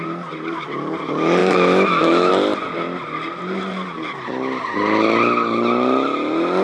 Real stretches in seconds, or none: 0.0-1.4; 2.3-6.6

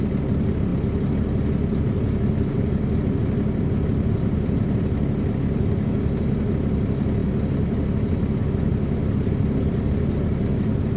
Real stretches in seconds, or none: 0.0-11.0

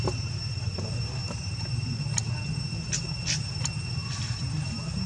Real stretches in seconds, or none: 0.0-5.1

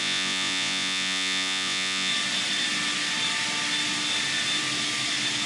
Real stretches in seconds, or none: 2.1-5.5

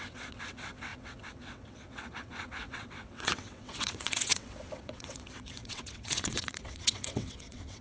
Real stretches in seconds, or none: none